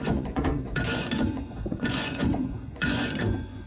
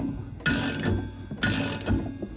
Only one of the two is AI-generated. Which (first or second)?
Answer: first